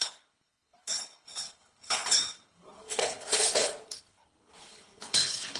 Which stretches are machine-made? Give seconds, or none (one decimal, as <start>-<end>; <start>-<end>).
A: 0.0-5.6